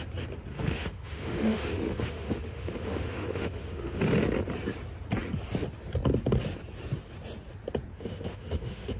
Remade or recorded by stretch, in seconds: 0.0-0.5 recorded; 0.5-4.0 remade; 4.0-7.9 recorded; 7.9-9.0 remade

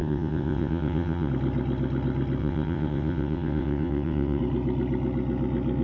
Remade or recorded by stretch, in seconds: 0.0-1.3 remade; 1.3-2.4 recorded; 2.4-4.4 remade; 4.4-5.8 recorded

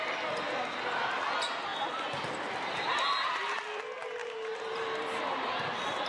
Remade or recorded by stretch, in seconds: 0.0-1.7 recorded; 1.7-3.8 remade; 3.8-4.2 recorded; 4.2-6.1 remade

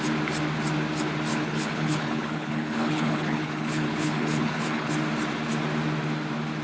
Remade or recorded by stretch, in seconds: 0.0-1.3 recorded; 1.3-4.9 remade; 4.9-6.6 recorded

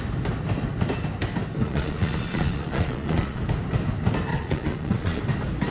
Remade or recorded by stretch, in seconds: 0.0-1.6 recorded; 1.6-3.4 remade; 3.4-4.3 recorded; 4.3-5.2 remade; 5.2-5.7 recorded

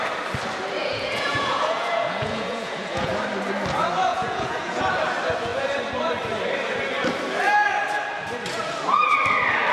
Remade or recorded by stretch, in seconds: 0.0-0.8 recorded; 0.8-3.1 remade; 3.1-4.1 recorded; 4.1-4.8 remade; 4.8-9.7 recorded

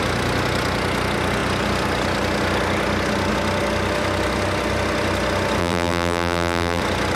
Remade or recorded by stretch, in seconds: 0.0-5.6 recorded; 5.6-6.8 remade; 6.8-7.2 recorded

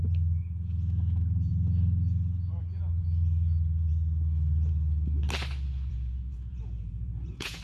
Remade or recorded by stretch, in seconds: 0.0-5.9 recorded; 5.9-7.6 remade